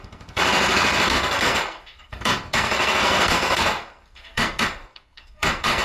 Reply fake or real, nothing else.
fake